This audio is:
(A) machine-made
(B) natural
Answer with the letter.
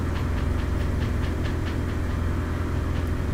A